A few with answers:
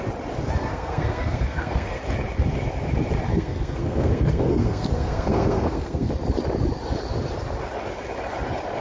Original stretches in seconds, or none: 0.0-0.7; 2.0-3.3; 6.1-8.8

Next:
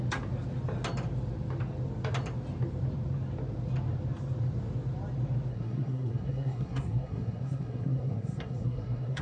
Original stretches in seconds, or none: 0.0-5.5

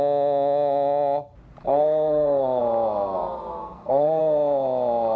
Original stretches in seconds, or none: 0.0-1.6; 2.6-3.6; 4.2-5.2

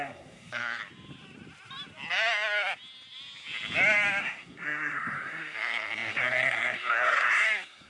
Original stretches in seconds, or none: 0.8-4.2